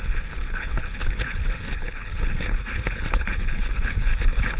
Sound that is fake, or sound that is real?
fake